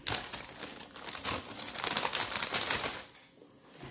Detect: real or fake real